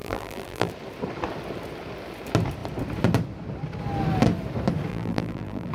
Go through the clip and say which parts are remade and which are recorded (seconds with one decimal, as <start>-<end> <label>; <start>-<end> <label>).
0.0-0.7 remade; 0.7-4.9 recorded; 4.9-5.7 remade